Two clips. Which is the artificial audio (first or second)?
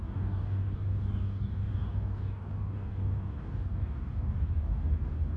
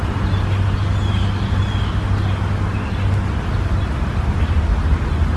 first